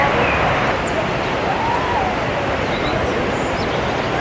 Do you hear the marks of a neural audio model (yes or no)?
no